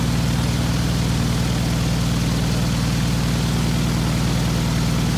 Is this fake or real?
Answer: real